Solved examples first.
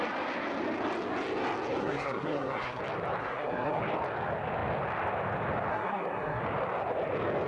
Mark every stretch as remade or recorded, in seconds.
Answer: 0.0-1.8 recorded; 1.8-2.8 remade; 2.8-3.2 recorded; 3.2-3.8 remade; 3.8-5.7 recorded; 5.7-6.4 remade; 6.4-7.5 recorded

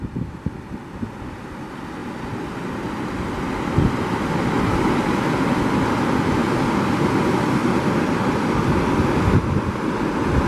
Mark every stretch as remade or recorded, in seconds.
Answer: 0.0-7.6 recorded; 7.6-8.5 remade; 8.5-10.5 recorded

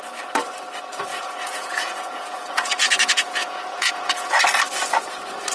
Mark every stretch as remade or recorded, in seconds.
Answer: 0.0-1.1 recorded; 1.1-4.4 remade; 4.4-5.5 recorded

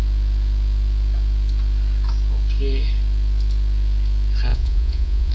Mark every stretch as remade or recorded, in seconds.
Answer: 0.0-4.5 recorded; 4.5-5.3 remade